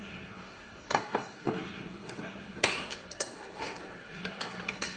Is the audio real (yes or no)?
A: no